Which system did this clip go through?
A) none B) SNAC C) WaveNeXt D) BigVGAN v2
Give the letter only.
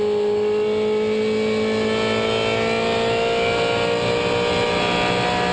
A